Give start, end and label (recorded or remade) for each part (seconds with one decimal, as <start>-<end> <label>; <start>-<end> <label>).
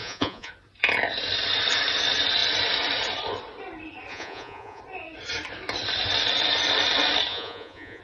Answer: 0.0-0.5 remade; 0.5-4.1 recorded; 4.1-4.8 remade; 4.8-7.3 recorded; 7.3-8.0 remade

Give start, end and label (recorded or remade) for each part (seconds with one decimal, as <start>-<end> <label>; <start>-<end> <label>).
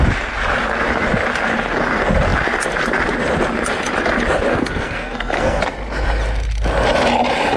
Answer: 0.0-4.5 recorded; 4.5-5.6 remade; 5.6-7.6 recorded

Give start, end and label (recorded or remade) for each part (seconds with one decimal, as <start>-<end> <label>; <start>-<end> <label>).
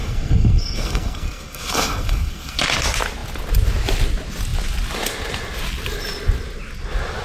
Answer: 0.0-2.6 remade; 2.6-7.2 recorded